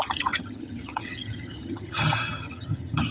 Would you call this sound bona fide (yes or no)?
no